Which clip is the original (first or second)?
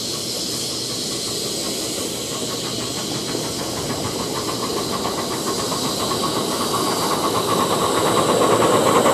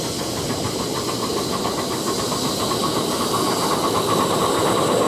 first